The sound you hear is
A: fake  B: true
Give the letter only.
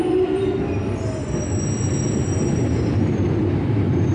B